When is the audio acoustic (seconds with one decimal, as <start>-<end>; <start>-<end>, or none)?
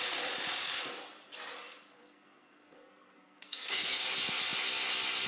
0.0-2.0; 4.0-5.3